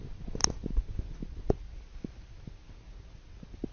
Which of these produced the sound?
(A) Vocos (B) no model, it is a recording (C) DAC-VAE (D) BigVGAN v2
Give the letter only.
B